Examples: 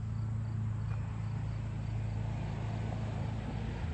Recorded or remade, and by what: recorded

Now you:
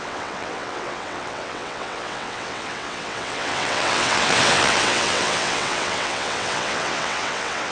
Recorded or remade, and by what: remade, vocoder, WaveNeXt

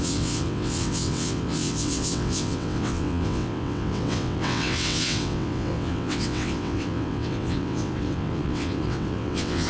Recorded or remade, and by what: remade, vocoder, WaveNeXt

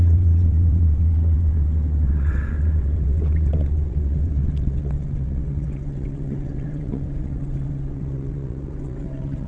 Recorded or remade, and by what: remade, vocoder, WaveNeXt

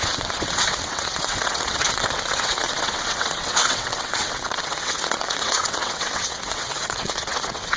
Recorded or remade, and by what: remade, vocoder, WaveNeXt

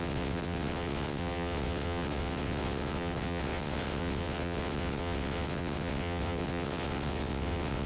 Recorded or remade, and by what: remade, vocoder, WaveNeXt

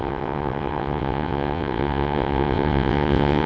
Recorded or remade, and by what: remade, vocoder, WaveNeXt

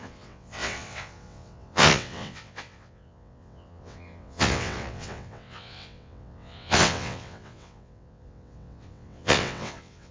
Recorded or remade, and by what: remade, vocoder, WaveNeXt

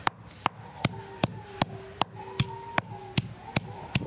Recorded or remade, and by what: recorded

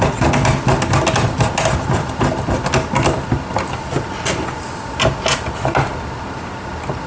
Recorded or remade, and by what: recorded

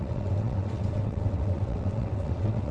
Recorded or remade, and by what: remade, vocoder, WaveNeXt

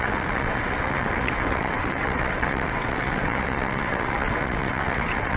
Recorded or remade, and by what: remade, vocoder, WaveNeXt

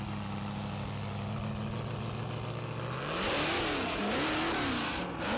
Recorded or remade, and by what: recorded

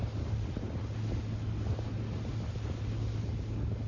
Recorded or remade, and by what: recorded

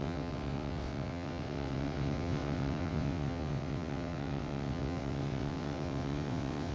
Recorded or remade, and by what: remade, vocoder, WaveNeXt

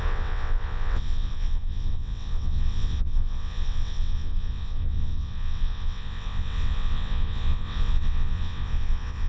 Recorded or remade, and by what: remade, vocoder, WaveNeXt